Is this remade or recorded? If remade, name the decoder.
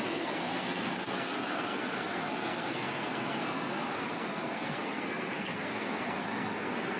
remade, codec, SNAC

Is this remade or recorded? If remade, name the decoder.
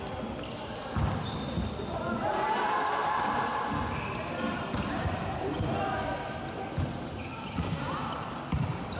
recorded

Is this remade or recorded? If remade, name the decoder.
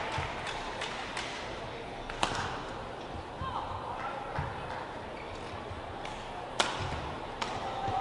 recorded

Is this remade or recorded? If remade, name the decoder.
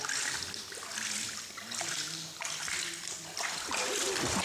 recorded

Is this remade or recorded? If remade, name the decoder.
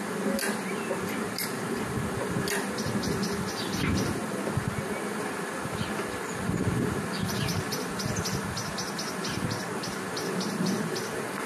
recorded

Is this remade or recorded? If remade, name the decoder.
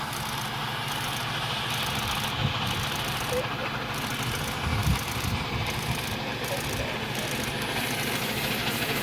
recorded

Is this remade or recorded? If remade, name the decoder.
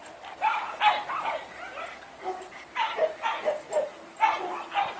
remade, vocoder, BigVGAN v2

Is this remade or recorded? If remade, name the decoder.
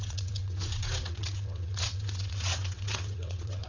remade, vocoder, WaveNeXt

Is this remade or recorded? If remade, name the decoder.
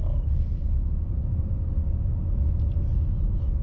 recorded